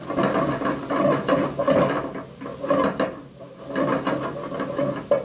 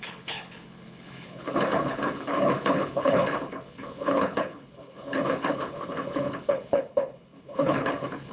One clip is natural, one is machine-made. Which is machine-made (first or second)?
second